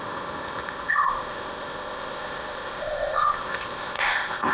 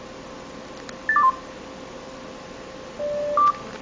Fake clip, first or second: first